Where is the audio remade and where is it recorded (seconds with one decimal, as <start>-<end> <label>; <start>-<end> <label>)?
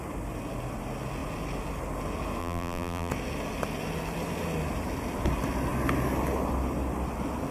0.0-2.4 recorded; 2.4-3.1 remade; 3.1-7.5 recorded